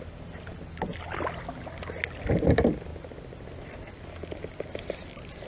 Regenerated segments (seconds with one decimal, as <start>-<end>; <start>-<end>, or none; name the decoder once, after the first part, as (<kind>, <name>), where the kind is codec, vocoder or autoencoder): none